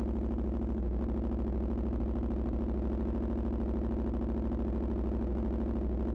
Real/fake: real